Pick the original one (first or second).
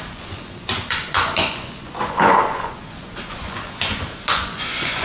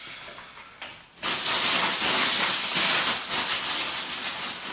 second